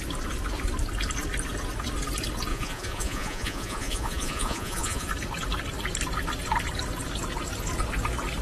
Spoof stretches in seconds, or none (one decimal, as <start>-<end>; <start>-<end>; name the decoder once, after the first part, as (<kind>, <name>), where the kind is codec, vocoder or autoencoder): 2.5-5.1 (vocoder, Vocos)

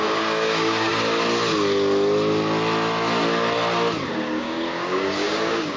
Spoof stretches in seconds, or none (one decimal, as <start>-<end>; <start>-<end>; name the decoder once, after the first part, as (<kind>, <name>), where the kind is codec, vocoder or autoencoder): 0.0-0.9 (codec, DAC); 4.4-5.8

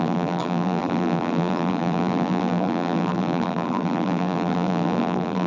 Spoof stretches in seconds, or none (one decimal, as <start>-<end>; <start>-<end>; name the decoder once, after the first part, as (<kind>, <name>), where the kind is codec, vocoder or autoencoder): 0.0-5.5 (vocoder, BigVGAN v2)

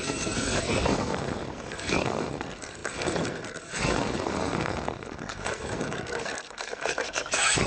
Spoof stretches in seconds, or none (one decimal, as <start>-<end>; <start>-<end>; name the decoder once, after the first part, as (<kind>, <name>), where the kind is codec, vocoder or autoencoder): 0.0-7.7 (codec, SNAC)

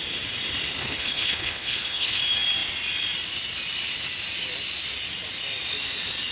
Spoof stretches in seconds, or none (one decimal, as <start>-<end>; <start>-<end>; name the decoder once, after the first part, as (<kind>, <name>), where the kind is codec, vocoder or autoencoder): 0.8-2.2 (codec, HILCodec)